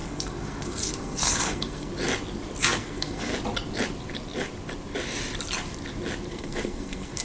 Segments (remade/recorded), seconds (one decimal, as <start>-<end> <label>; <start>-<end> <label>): 0.0-1.9 remade; 1.9-2.6 recorded; 2.6-3.3 remade; 3.3-6.3 recorded; 6.3-7.2 remade